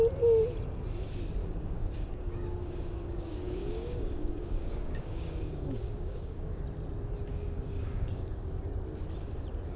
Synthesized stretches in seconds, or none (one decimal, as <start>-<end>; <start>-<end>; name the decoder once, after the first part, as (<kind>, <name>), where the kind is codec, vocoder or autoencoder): 1.4-6.6 (codec, DAC); 7.3-8.5